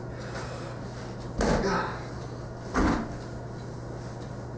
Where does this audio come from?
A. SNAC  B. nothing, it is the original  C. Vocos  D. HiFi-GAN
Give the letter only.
B